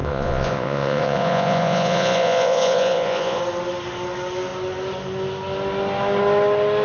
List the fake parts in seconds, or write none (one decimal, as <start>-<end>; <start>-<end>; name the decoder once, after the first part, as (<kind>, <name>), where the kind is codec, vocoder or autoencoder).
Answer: 0.0-3.4 (vocoder, Vocos)